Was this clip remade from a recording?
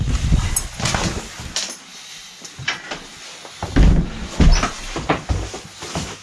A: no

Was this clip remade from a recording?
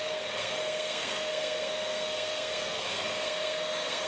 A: yes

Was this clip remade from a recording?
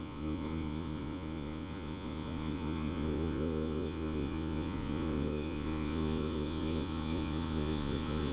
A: yes